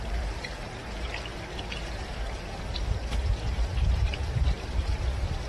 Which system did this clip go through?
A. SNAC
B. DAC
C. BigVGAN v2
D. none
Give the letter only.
C